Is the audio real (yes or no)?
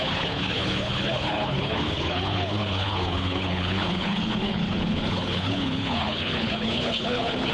no